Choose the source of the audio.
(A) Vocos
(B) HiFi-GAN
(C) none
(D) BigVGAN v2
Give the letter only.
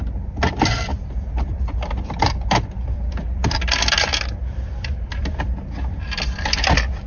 D